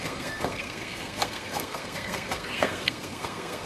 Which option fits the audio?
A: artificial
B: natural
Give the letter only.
A